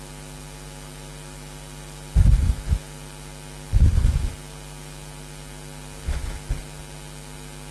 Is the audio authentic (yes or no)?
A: yes